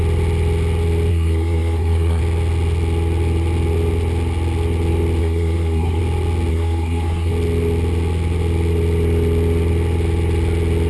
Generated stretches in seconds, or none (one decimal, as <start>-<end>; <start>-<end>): 1.1-2.2; 5.2-6.0; 6.5-7.3